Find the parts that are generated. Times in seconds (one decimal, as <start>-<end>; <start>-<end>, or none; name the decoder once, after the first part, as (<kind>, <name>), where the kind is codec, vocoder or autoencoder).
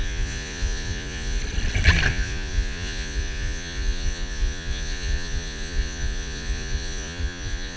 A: 0.0-1.4 (vocoder, Vocos); 2.1-7.8